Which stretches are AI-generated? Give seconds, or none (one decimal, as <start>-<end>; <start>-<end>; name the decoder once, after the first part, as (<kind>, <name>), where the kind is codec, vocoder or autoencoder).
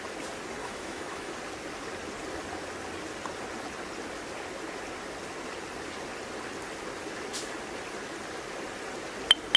0.6-1.3 (autoencoder, DAC-VAE)